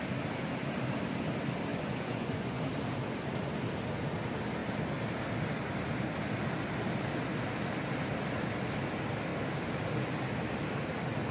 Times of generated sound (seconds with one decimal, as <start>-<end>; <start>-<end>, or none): 1.7-2.6